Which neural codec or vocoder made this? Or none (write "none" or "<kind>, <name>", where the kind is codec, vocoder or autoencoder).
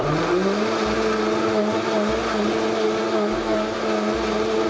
none